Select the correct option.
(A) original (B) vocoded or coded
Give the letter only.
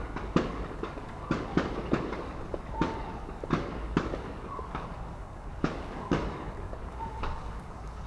B